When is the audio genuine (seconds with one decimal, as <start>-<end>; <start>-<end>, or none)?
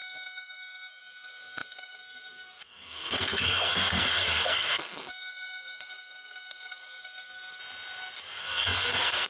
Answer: 7.6-8.4